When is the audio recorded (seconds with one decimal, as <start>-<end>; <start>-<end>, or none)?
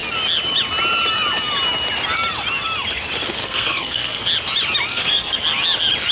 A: 0.0-3.4; 4.2-4.9; 5.4-6.1